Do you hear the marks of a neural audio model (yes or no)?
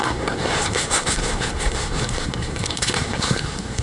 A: yes